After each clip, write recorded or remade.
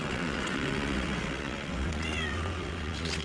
remade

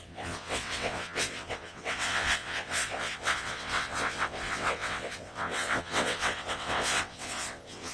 remade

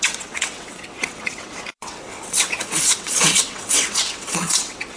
remade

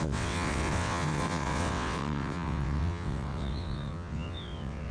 remade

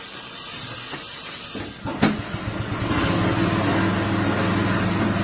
recorded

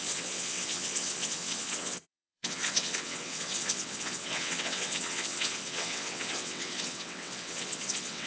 remade